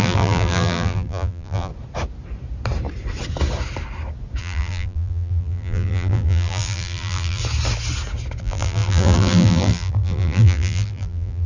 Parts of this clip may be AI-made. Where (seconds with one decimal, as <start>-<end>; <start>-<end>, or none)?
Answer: 0.0-1.7; 4.4-7.4; 8.4-11.5